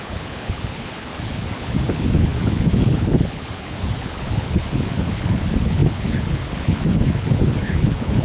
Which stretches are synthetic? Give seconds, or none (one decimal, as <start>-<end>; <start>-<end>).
0.0-8.2